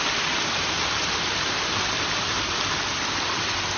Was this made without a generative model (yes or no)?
yes